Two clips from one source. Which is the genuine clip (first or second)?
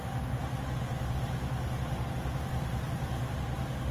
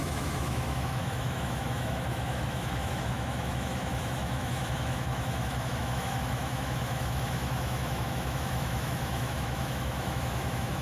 first